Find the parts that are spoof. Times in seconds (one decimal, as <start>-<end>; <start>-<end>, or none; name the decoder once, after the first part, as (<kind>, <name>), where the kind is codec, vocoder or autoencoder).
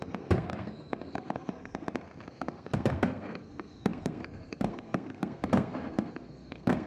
0.0-6.9 (codec, SNAC)